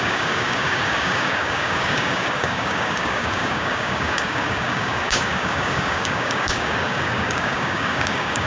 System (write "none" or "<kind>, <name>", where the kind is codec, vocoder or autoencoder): codec, DAC